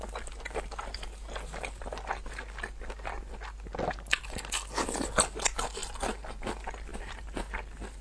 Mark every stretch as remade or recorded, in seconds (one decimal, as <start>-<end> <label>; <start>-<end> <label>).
0.0-6.9 recorded; 6.9-7.5 remade; 7.5-8.0 recorded